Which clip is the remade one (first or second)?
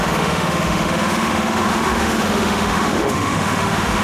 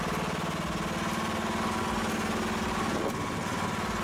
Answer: first